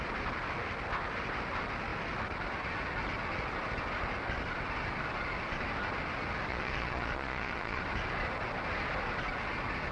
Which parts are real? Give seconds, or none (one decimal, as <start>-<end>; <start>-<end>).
0.0-6.5; 7.8-9.9